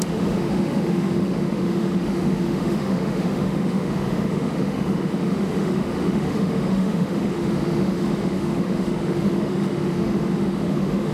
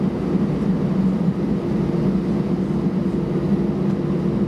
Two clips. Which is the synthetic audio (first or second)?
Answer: first